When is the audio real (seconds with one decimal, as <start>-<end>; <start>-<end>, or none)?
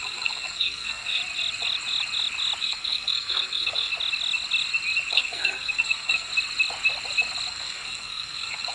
1.2-2.6; 3.9-5.1; 6.3-7.5